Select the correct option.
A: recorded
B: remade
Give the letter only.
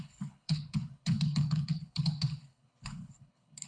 B